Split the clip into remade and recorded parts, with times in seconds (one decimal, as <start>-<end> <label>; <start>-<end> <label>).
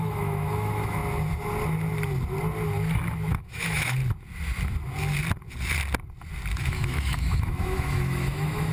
0.0-1.0 remade; 1.0-3.3 recorded; 3.3-4.0 remade; 4.0-6.6 recorded; 6.6-8.7 remade